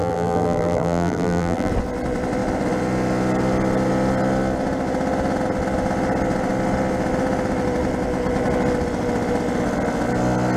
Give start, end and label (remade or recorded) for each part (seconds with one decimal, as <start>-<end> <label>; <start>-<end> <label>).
0.0-1.7 remade; 1.7-10.6 recorded